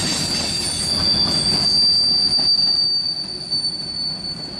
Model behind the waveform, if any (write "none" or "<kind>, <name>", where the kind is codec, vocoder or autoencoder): none